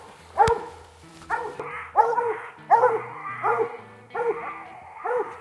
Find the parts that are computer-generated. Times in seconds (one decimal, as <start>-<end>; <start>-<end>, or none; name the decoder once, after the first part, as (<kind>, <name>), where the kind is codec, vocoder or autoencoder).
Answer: none